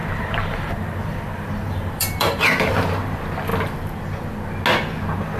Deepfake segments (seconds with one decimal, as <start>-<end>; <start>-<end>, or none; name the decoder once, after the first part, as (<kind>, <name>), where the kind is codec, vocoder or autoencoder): 0.0-2.9 (vocoder, BigVGAN v2)